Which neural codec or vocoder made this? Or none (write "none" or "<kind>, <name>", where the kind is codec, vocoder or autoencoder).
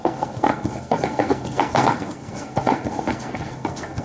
codec, SNAC